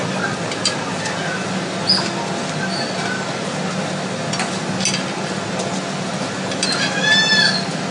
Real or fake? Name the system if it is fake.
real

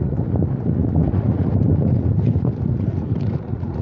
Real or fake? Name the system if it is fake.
fake, vocoder, Vocos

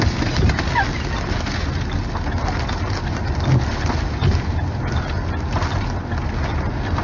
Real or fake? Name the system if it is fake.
real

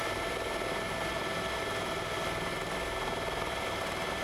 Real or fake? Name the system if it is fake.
real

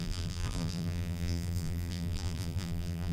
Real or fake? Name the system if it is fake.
fake, vocoder, BigVGAN v2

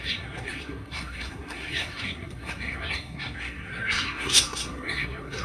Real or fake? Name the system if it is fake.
fake, codec, SNAC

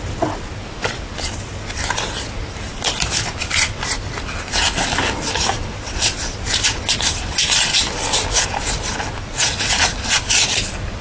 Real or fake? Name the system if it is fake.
real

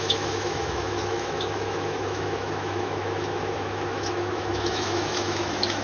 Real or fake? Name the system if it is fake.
fake, autoencoder, DAC-VAE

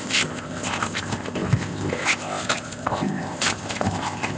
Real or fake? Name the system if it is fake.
fake, codec, ZipCodec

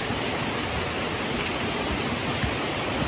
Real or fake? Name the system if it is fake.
real